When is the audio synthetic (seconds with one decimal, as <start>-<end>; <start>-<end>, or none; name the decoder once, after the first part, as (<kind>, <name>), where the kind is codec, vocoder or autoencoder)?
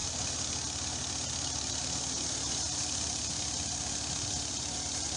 none